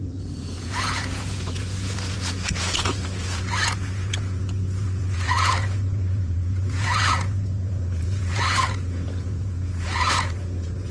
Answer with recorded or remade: remade